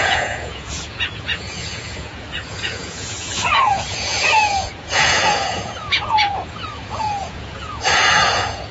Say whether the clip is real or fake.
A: fake